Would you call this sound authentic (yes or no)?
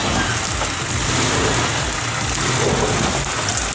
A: yes